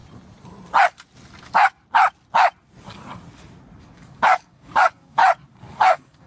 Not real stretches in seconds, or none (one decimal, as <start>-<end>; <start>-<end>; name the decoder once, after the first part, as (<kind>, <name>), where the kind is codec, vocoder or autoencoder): 3.8-5.2 (codec, DAC); 5.7-6.3